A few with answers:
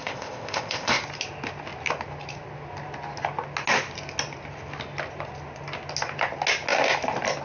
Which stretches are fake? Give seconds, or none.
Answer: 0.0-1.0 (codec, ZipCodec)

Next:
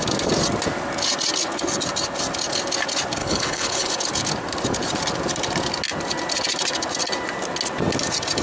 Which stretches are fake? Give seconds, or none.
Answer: 3.2-3.9 (codec, HILCodec)

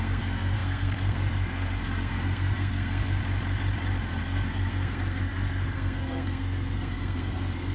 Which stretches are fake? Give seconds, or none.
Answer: 0.0-3.2 (codec, SNAC); 4.2-7.7

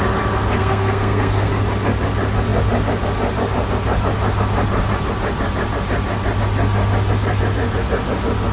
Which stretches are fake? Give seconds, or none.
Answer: 0.6-1.5 (codec, SNAC)